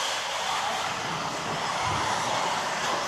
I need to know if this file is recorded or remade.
recorded